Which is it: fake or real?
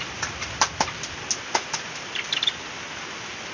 real